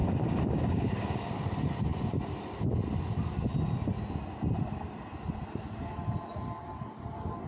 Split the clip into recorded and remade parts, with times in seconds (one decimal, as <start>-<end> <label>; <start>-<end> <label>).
0.0-1.3 remade; 1.3-7.5 recorded